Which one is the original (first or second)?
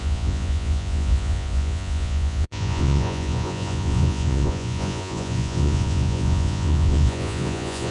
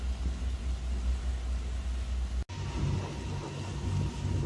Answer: second